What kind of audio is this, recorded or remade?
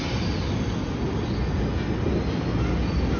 recorded